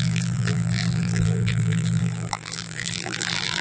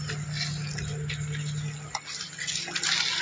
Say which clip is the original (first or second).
second